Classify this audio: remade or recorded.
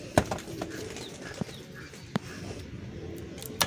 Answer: recorded